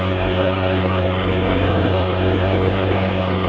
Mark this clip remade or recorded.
remade